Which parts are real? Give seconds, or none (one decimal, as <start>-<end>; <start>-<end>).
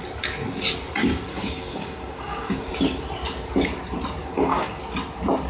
0.0-1.3; 2.7-4.2; 4.8-5.5